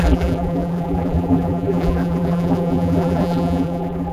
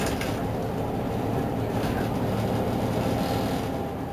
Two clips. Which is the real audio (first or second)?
second